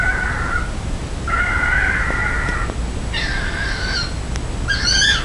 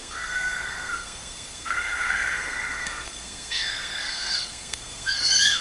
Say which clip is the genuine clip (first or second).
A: first